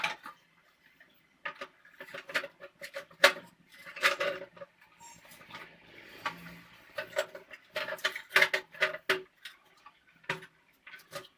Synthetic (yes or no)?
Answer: no